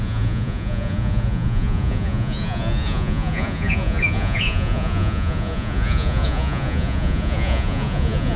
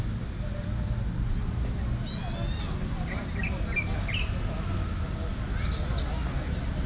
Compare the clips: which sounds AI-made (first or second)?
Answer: first